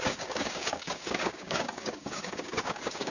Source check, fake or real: fake